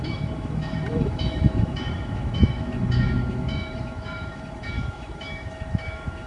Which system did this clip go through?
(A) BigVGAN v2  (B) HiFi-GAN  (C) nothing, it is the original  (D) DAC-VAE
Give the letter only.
D